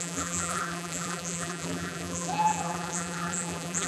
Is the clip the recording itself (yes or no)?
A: no